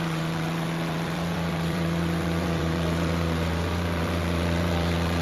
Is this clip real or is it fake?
fake